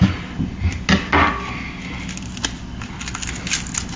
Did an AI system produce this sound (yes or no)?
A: no